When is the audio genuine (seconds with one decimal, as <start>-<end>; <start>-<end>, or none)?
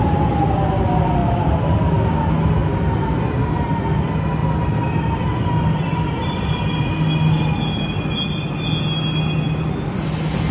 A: 0.0-1.2; 2.2-2.6; 3.2-4.4; 6.4-10.5